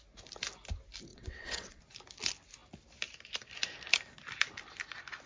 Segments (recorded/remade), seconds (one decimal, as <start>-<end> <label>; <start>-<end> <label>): 0.0-1.1 recorded; 1.1-1.8 remade; 1.8-5.3 recorded